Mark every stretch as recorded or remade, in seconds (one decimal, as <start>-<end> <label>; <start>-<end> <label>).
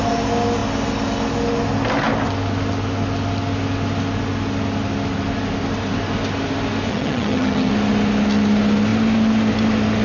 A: 0.0-6.9 recorded; 6.9-7.7 remade; 7.7-10.0 recorded